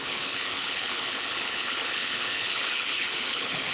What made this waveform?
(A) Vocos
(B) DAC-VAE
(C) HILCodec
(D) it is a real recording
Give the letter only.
C